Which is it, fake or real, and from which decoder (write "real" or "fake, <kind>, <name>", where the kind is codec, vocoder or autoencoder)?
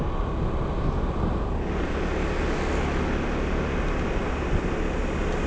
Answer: real